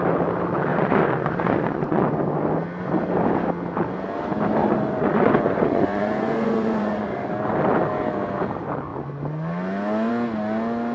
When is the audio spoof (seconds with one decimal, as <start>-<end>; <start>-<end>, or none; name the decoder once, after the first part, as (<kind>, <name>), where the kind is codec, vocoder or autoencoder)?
0.7-2.2 (vocoder, Vocos); 4.6-7.3